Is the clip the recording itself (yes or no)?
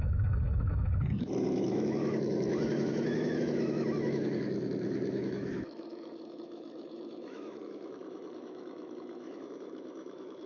no